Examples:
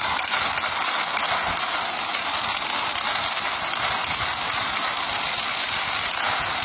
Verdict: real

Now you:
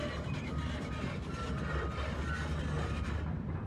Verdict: real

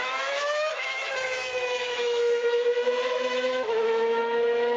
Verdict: fake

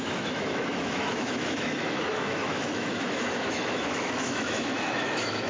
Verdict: fake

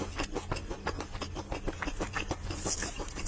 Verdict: real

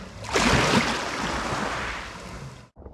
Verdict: real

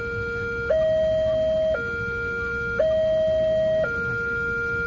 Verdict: real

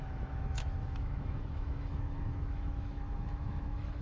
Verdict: fake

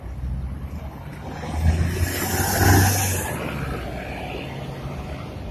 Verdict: real